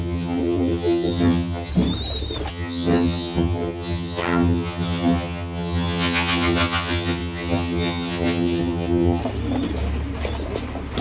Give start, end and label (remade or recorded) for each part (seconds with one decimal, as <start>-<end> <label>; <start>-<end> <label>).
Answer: 0.0-1.7 remade; 1.7-2.5 recorded; 2.5-9.2 remade; 9.2-11.0 recorded